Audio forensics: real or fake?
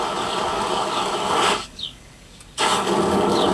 fake